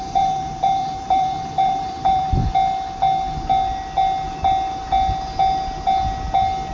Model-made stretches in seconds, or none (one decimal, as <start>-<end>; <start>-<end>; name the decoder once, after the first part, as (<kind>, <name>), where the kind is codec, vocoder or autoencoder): 0.0-2.4 (vocoder, BigVGAN v2)

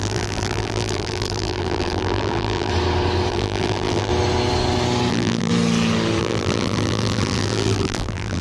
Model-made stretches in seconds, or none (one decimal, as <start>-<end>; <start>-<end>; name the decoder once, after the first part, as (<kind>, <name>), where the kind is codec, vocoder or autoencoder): 0.0-2.7 (vocoder, BigVGAN v2); 3.3-4.1; 5.1-5.5; 6.2-8.4

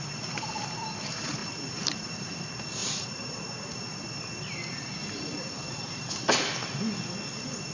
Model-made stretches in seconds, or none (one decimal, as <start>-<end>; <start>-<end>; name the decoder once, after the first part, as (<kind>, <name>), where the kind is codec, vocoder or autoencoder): 1.4-2.3 (vocoder, BigVGAN v2); 2.8-3.7; 5.0-6.1